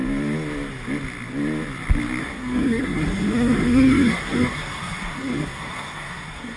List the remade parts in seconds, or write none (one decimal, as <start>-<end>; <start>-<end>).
2.2-6.6